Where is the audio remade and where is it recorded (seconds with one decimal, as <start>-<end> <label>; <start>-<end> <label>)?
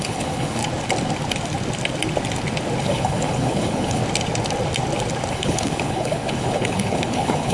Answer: 0.0-0.6 remade; 0.6-2.8 recorded; 2.8-4.0 remade; 4.0-5.3 recorded; 5.3-7.5 remade